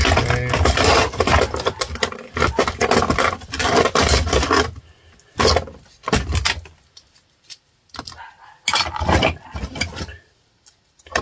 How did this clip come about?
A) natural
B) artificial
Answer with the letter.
A